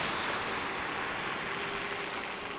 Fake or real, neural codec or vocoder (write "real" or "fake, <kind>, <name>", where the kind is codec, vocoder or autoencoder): real